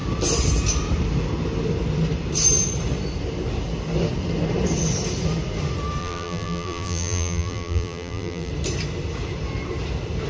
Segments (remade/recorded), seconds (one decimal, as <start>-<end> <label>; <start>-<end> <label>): 0.0-6.0 recorded; 6.0-8.5 remade; 8.5-10.3 recorded